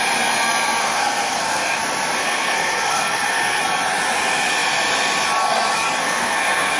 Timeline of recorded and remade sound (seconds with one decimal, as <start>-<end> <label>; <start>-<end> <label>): 0.0-0.8 recorded; 0.8-1.8 remade; 1.8-2.2 recorded; 2.2-3.6 remade; 3.6-6.0 recorded; 6.0-6.8 remade